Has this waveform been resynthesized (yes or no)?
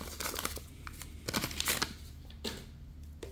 no